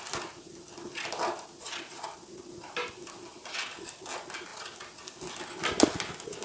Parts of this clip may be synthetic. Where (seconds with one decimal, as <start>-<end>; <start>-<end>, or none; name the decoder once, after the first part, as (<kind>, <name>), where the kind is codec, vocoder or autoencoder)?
none